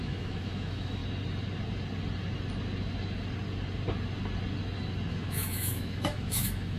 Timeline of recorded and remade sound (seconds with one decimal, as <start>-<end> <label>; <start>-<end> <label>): 0.0-1.0 remade; 1.0-5.1 recorded; 5.1-6.8 remade